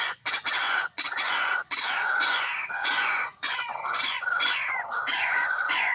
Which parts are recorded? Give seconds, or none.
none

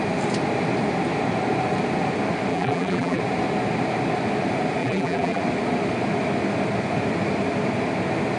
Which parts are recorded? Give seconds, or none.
0.0-2.5; 3.2-4.8; 5.4-8.4

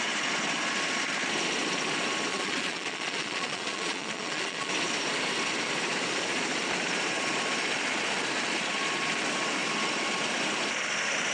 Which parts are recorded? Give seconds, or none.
0.0-2.3; 4.7-11.3

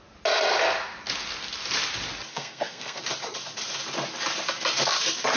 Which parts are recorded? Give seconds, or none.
0.0-2.3; 3.0-5.4

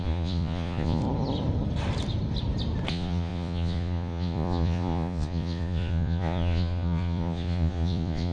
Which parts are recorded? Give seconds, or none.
1.0-2.9

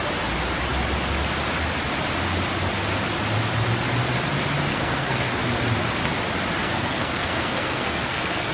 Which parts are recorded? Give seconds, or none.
0.0-4.7; 5.3-6.6